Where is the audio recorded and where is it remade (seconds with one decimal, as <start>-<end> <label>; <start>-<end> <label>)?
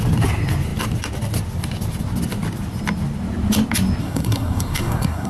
0.0-4.0 recorded; 4.0-5.3 remade